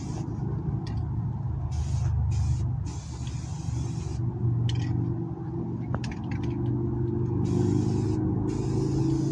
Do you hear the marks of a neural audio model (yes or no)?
no